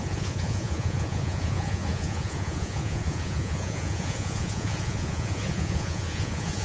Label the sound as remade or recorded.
remade